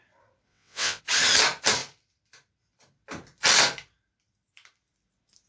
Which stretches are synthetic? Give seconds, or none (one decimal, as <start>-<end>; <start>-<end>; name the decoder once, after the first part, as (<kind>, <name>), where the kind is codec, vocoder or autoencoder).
0.5-1.0 (vocoder, WaveNeXt)